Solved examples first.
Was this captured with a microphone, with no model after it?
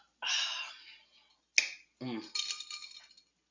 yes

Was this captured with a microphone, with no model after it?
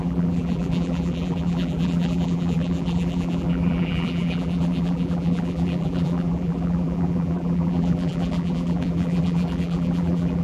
no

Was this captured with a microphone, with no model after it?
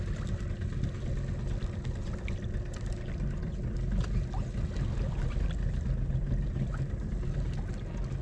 yes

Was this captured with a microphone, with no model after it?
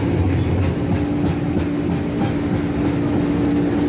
yes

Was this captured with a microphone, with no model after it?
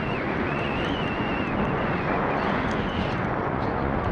no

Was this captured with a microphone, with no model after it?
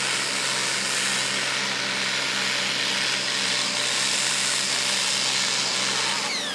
yes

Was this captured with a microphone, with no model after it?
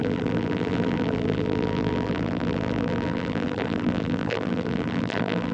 no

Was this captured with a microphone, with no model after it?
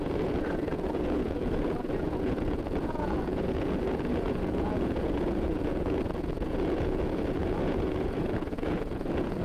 no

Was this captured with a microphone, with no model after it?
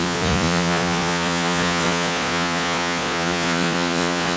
no